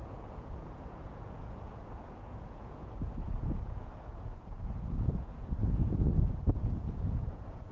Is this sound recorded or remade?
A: remade